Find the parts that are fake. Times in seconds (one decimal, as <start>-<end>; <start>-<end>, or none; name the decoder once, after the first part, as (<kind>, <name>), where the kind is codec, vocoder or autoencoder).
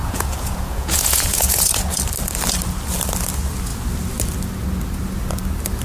0.0-2.0 (vocoder, Vocos)